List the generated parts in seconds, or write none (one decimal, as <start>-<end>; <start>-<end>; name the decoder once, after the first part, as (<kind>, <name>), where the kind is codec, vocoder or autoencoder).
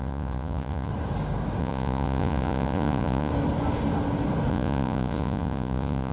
0.0-0.9 (vocoder, Vocos); 1.6-3.3; 4.5-6.1